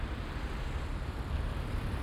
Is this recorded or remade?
remade